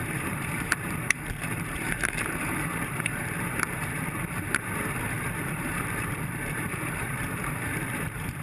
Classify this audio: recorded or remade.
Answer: remade